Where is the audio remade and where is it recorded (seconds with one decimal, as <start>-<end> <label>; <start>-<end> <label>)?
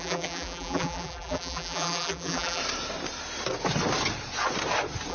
0.0-2.6 remade; 2.6-5.1 recorded